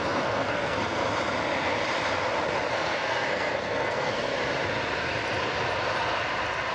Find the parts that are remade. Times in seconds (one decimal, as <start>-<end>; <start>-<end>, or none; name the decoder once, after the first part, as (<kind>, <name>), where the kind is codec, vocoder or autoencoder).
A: 0.0-1.0 (codec, SNAC); 2.7-4.3